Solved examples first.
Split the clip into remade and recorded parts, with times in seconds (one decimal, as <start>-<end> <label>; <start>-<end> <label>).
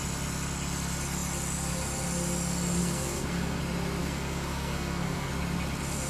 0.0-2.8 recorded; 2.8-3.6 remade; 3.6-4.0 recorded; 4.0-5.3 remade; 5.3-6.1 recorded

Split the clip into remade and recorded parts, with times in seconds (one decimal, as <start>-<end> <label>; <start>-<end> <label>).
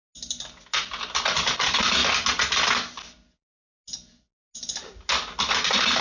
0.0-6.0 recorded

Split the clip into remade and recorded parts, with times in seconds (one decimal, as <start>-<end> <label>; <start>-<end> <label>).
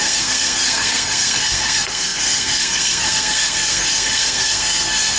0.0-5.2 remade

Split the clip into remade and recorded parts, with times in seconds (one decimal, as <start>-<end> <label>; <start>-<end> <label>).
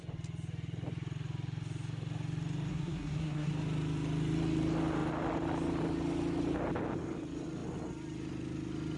0.0-2.7 recorded; 2.7-3.5 remade; 3.5-9.0 recorded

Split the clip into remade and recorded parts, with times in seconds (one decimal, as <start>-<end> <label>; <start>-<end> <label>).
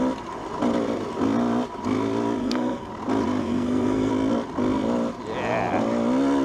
0.0-2.4 recorded; 2.4-2.9 remade; 2.9-3.4 recorded; 3.4-4.1 remade; 4.1-6.4 recorded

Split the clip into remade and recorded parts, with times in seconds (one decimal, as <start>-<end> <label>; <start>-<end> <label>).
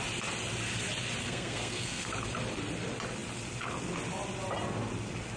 0.0-1.2 recorded; 1.2-2.1 remade; 2.1-5.4 recorded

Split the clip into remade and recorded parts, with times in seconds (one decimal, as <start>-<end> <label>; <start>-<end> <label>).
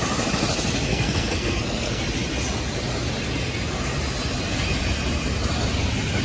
0.0-0.9 recorded; 0.9-2.0 remade; 2.0-6.2 recorded